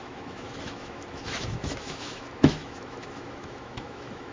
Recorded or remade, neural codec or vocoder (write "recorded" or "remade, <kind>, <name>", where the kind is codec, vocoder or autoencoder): remade, autoencoder, DAC-VAE